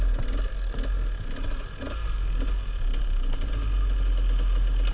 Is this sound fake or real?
real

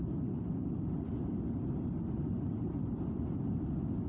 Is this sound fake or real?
real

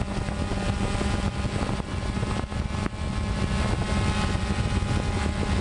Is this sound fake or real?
real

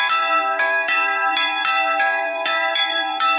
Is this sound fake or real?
fake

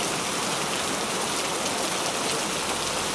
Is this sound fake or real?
real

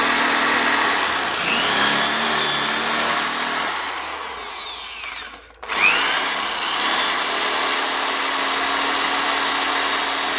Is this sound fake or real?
real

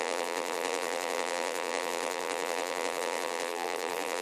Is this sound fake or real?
fake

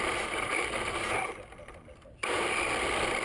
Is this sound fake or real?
real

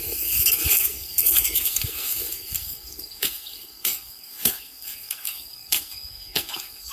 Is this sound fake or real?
fake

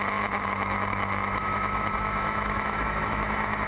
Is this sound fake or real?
fake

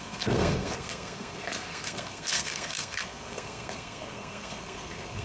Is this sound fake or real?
fake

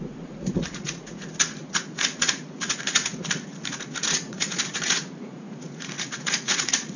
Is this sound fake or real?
fake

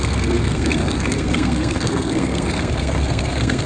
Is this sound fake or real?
fake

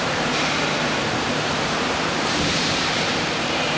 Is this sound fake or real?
fake